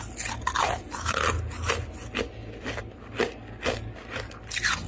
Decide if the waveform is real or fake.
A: real